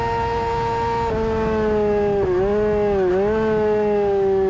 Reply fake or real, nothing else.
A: real